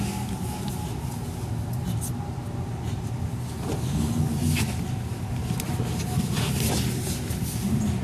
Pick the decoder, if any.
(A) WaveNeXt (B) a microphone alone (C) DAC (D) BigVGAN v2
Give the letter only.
B